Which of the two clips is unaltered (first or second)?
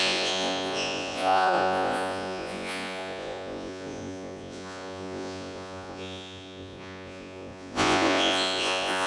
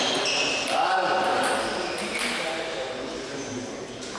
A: second